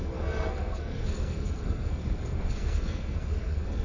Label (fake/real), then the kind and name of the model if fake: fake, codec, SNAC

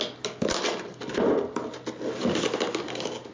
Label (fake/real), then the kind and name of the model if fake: real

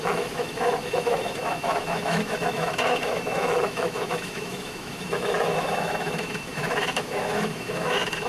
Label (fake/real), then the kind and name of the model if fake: fake, autoencoder, DAC-VAE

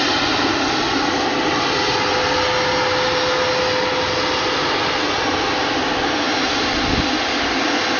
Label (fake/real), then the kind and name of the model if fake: real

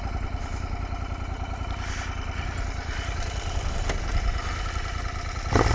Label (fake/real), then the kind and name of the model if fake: real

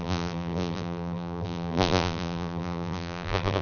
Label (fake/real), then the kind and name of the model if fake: fake, vocoder, BigVGAN v2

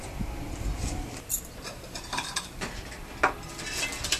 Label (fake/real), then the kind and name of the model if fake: real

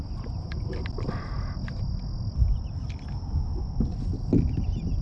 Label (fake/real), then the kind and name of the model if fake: real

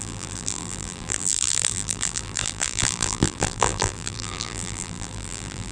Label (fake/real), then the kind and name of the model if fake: fake, vocoder, BigVGAN v2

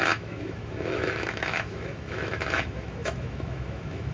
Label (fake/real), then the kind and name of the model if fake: fake, autoencoder, DAC-VAE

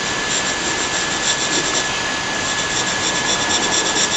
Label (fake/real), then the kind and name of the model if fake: real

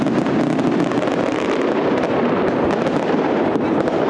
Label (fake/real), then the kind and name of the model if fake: real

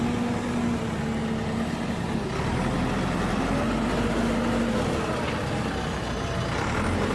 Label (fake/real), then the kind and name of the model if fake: real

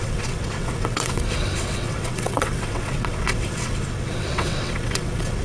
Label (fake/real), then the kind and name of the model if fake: fake, vocoder, WaveNeXt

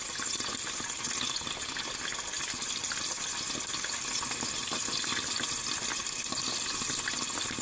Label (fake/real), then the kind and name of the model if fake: real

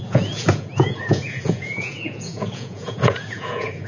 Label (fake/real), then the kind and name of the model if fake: fake, vocoder, Vocos